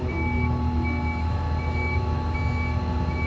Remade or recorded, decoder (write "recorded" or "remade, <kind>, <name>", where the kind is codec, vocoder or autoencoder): recorded